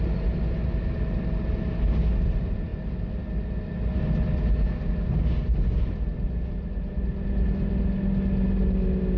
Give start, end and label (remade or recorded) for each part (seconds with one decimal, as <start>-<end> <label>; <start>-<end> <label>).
0.0-9.2 recorded